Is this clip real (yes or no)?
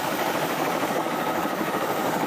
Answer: no